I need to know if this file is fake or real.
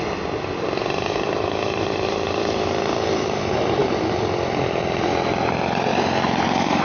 real